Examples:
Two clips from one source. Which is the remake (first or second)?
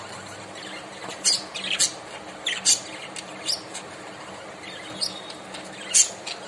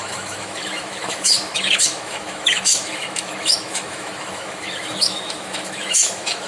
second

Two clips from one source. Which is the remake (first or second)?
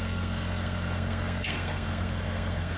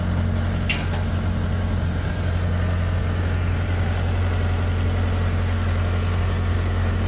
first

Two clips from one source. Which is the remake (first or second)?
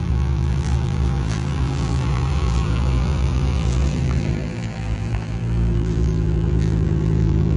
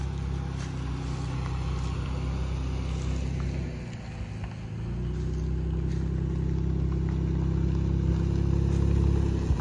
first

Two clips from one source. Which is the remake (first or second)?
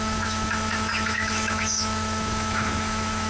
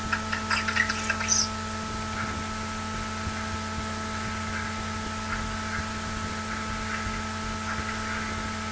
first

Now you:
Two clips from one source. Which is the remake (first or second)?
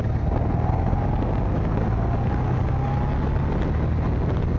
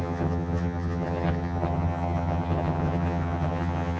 second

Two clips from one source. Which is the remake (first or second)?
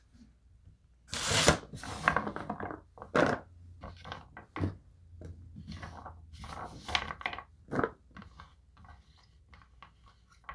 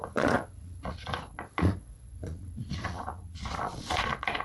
second